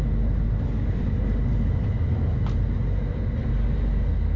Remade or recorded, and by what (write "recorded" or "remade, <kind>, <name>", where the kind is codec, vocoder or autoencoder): recorded